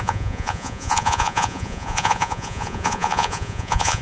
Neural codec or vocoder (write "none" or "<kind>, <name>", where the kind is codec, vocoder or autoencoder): vocoder, Vocos